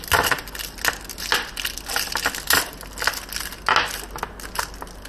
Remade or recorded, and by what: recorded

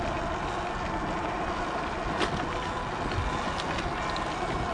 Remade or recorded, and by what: recorded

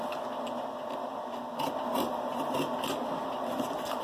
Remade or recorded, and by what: recorded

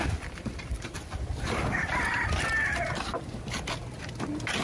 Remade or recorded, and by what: recorded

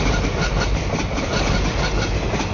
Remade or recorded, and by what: recorded